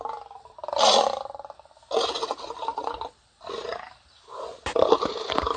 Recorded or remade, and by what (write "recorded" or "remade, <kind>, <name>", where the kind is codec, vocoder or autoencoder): recorded